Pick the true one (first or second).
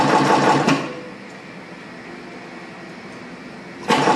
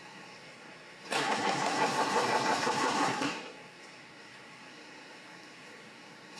first